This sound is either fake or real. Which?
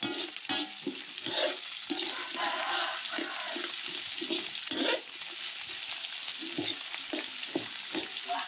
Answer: real